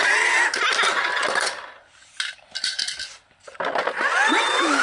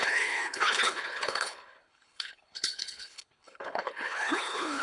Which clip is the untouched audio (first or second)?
first